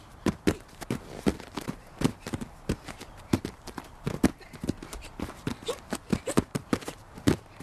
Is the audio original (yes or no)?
no